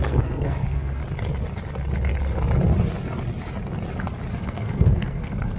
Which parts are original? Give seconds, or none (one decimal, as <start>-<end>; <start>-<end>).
1.0-4.4